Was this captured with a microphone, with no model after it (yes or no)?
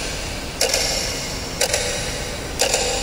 yes